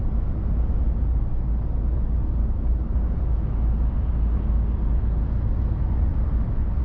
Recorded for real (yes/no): yes